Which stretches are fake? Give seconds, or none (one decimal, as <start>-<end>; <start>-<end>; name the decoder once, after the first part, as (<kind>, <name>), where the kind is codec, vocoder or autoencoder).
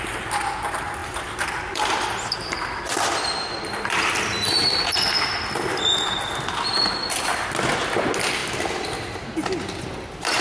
1.0-5.8 (vocoder, BigVGAN v2); 8.4-9.3